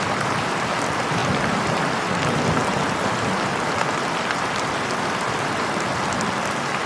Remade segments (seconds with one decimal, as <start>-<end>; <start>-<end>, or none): 0.0-1.2; 1.8-2.6

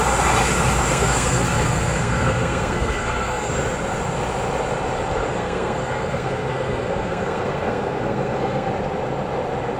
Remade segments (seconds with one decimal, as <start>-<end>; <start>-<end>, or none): 0.9-3.5; 5.3-8.7

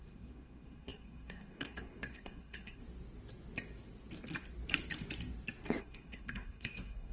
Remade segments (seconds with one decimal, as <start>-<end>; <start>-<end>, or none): 0.0-2.8; 5.8-7.1